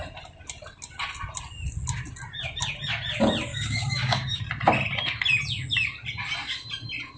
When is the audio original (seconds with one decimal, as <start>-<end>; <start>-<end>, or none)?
0.0-3.5; 4.4-7.2